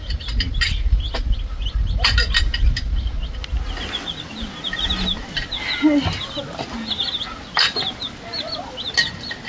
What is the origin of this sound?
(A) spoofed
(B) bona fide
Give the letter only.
B